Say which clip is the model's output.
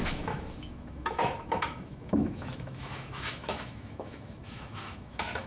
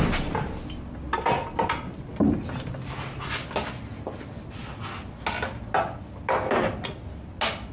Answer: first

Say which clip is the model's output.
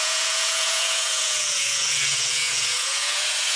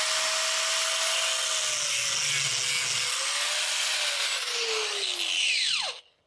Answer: first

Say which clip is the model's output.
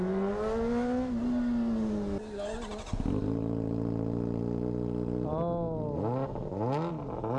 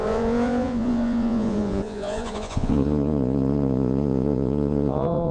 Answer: second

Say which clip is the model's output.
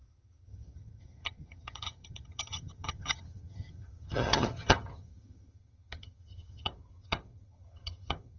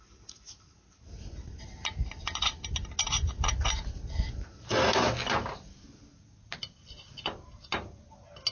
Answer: first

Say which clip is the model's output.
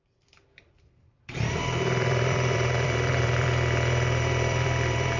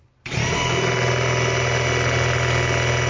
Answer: first